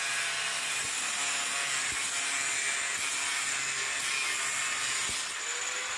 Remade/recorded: recorded